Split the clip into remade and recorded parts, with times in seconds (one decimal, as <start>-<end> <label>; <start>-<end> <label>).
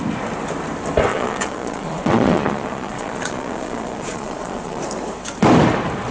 0.0-1.1 recorded; 1.1-4.8 remade; 4.8-6.1 recorded